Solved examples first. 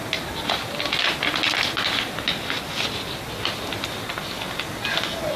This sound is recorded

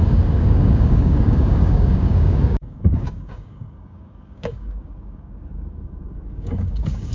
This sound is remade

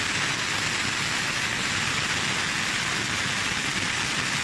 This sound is recorded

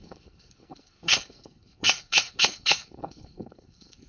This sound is remade